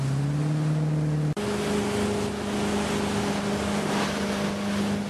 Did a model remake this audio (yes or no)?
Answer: no